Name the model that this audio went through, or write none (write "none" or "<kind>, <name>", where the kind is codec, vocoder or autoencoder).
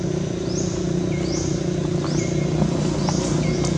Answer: none